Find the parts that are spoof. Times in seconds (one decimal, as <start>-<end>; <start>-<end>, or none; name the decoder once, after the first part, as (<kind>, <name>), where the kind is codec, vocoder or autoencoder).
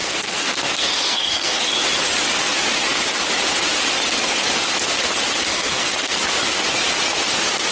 0.0-1.6 (codec, SNAC); 5.5-6.2